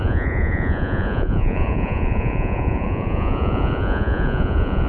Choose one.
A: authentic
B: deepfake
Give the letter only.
B